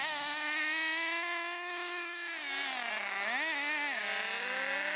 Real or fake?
real